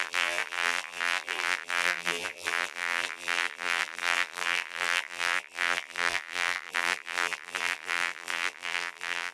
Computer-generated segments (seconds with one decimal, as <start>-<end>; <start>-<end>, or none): 0.0-9.3